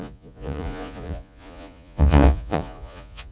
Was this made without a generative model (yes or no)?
no